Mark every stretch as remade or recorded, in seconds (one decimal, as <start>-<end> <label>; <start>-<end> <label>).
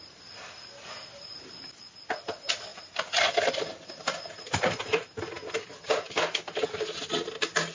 0.0-7.7 recorded